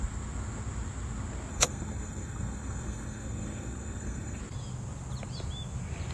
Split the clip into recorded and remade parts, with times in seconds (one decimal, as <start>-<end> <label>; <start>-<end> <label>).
0.0-1.5 recorded; 1.5-4.4 remade; 4.4-6.1 recorded